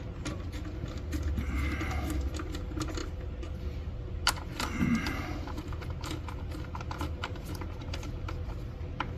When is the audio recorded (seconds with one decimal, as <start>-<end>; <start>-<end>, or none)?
0.0-7.2; 8.3-9.2